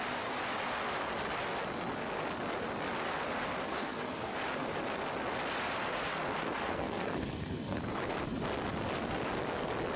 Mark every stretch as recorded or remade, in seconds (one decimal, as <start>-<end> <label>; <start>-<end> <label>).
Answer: 0.0-3.7 recorded; 3.7-4.3 remade; 4.3-6.6 recorded; 6.6-7.8 remade; 7.8-10.0 recorded